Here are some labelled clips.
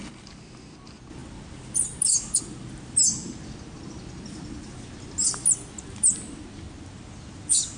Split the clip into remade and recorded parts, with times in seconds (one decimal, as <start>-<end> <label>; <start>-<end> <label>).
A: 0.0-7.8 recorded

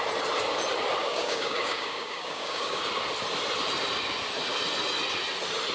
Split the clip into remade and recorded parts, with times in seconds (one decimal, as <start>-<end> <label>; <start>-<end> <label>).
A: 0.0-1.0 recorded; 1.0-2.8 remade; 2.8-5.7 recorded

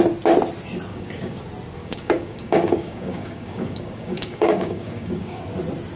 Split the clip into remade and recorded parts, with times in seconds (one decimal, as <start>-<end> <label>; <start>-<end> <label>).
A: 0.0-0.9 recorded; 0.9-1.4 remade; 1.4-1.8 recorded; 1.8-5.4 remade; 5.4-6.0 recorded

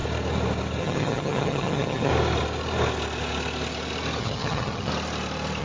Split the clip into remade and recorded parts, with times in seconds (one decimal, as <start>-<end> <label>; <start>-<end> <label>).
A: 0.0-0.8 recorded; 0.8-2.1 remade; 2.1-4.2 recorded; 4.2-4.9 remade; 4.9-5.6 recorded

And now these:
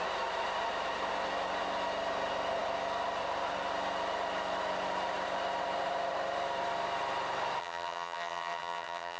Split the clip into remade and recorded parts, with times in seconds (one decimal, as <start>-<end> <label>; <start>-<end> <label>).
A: 0.0-7.6 recorded; 7.6-9.2 remade